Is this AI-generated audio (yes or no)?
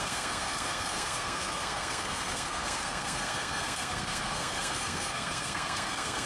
yes